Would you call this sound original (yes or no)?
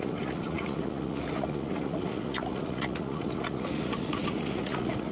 no